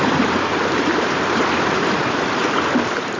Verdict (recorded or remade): remade